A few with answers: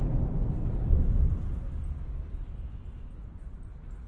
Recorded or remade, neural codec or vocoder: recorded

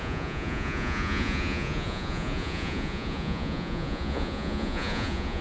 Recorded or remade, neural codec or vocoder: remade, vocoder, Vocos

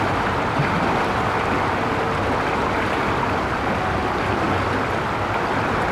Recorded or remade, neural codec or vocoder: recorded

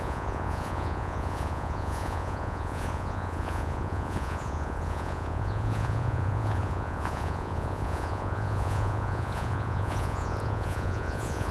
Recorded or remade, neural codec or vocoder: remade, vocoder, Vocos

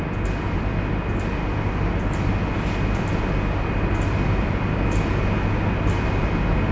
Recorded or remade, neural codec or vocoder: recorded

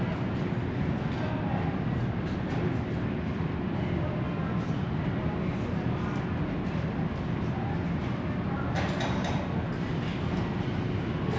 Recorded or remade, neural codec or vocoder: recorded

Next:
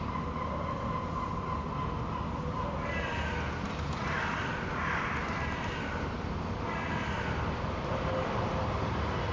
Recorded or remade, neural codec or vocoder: remade, vocoder, BigVGAN v2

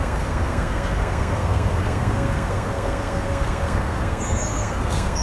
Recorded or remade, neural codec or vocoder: remade, codec, SNAC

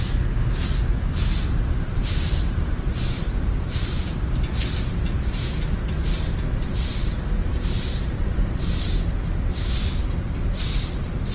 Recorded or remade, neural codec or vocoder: recorded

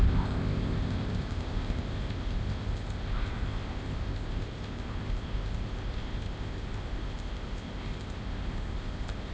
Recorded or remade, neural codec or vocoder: remade, codec, ZipCodec